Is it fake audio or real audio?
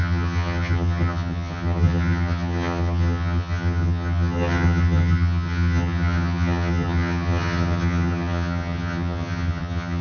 fake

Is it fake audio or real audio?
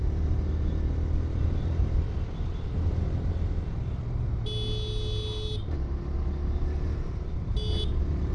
real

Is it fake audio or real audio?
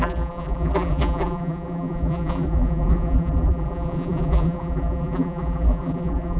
fake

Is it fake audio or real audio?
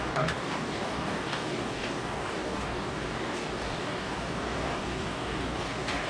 fake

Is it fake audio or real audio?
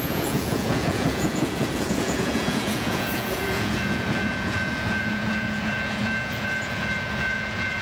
fake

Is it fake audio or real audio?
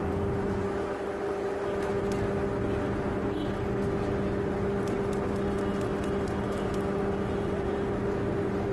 real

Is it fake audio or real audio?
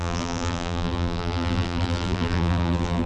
fake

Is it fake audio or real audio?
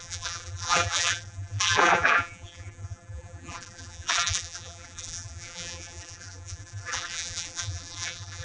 fake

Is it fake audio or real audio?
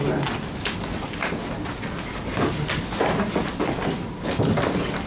real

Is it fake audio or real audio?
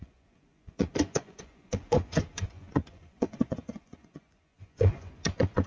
fake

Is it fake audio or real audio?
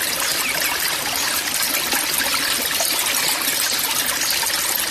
real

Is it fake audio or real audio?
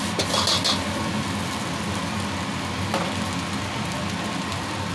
real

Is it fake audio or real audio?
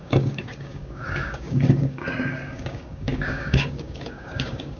fake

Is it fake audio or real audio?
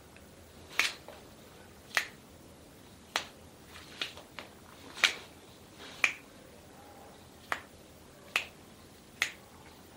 real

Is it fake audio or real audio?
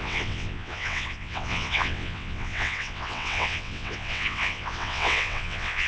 fake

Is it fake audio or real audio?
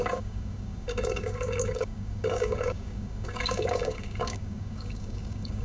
fake